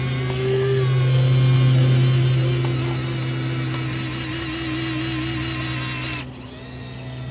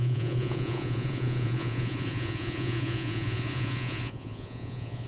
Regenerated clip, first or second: second